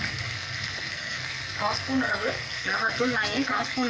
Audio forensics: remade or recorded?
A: remade